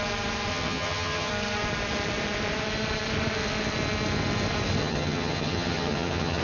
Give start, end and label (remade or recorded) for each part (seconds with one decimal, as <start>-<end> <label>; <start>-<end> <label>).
0.0-0.5 recorded; 0.5-1.3 remade; 1.3-4.8 recorded; 4.8-6.4 remade